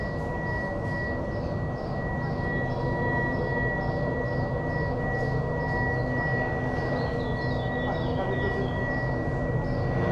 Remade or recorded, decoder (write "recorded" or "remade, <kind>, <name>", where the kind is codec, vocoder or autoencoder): recorded